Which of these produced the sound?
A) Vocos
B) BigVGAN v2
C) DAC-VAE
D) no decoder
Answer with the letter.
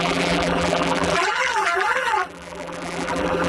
B